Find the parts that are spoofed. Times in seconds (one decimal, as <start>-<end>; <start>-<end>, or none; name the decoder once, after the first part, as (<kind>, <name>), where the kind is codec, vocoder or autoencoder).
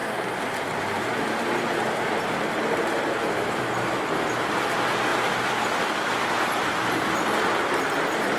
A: 3.2-3.7 (autoencoder, DAC-VAE)